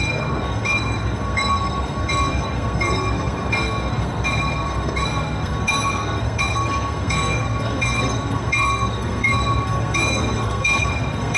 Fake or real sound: fake